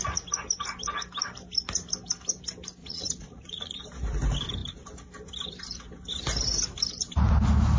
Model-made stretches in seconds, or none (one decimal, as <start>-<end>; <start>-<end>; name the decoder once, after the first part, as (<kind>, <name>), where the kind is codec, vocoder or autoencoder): 2.8-3.8 (vocoder, Vocos)